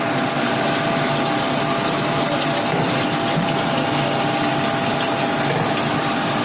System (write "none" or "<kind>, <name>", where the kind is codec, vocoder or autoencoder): none